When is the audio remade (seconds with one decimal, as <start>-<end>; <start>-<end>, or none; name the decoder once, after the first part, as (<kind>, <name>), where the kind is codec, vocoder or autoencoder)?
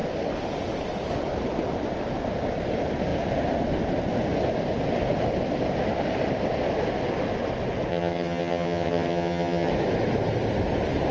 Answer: 7.9-9.7 (vocoder, HiFi-GAN)